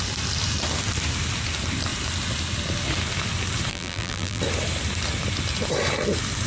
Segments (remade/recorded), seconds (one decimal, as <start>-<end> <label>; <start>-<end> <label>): 0.0-3.7 recorded; 3.7-4.4 remade; 4.4-6.5 recorded